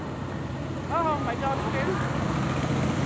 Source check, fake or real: real